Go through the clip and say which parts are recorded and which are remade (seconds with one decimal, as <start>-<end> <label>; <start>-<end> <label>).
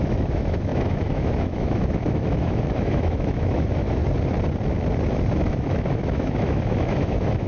0.0-4.0 remade; 4.0-5.3 recorded; 5.3-7.5 remade